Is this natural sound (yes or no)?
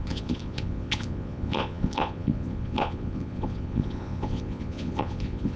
no